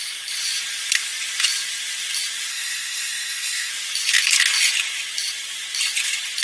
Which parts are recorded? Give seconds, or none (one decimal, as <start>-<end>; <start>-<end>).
0.0-2.5; 3.7-6.4